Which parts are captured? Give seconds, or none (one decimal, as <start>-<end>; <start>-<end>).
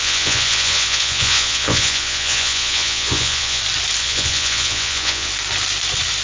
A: 3.6-4.0; 5.3-6.2